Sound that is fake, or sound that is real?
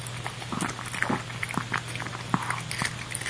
real